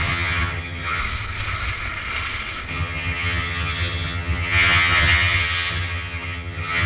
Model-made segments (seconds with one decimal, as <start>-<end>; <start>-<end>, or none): 0.0-1.0; 2.7-6.9